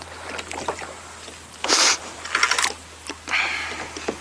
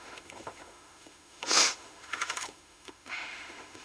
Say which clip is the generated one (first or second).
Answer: second